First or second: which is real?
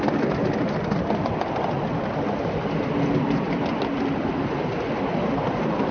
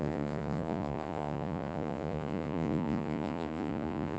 first